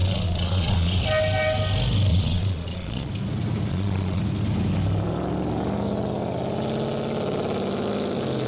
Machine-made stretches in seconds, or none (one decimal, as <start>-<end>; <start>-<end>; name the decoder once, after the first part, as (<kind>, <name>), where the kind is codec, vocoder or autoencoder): 0.0-1.0 (vocoder, Vocos); 2.1-3.1; 3.7-4.2